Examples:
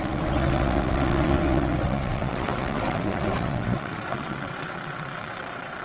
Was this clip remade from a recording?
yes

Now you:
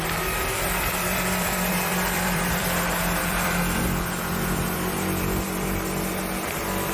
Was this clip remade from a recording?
yes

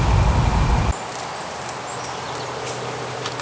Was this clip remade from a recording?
no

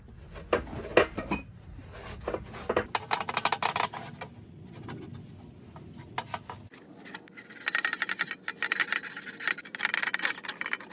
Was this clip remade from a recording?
no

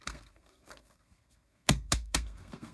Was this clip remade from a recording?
yes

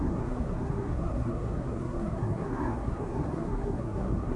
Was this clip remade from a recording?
yes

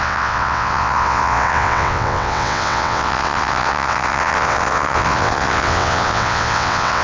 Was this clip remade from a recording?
yes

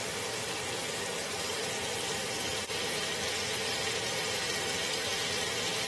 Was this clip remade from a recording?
no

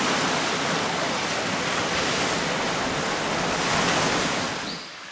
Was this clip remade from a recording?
no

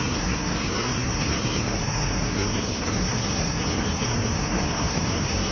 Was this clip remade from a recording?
yes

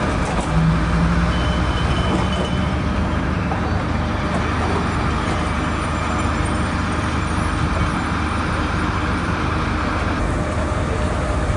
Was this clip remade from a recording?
no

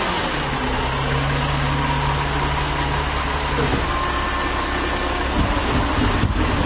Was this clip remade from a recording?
no